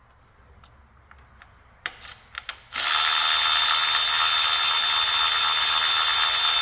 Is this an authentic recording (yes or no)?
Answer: yes